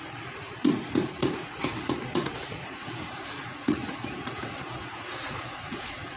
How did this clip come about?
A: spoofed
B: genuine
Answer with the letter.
A